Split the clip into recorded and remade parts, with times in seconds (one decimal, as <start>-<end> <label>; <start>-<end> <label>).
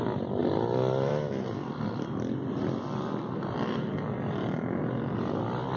0.0-0.4 recorded; 0.4-3.9 remade; 3.9-5.8 recorded